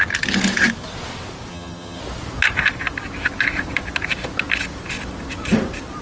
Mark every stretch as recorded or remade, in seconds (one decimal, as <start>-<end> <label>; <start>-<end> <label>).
0.0-1.5 recorded; 1.5-2.0 remade; 2.0-6.0 recorded